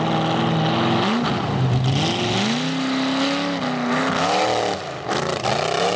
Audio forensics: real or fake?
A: real